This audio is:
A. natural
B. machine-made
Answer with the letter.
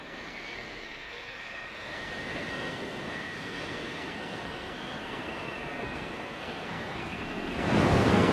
B